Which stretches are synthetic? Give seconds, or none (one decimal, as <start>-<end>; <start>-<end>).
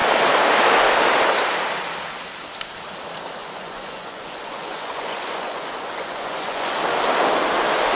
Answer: 3.4-6.8